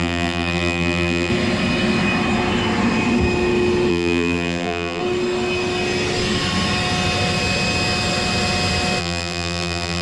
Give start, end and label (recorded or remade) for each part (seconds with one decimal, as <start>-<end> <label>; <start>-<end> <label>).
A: 0.0-1.3 remade; 1.3-3.9 recorded; 3.9-5.0 remade; 5.0-9.0 recorded; 9.0-10.0 remade